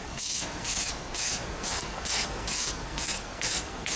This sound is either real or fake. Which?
fake